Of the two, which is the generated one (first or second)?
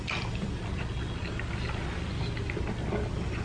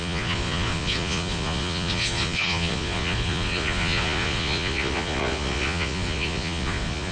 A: second